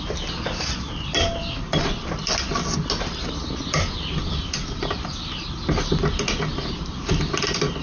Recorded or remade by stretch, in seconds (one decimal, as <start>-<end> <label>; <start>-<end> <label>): 0.0-7.8 recorded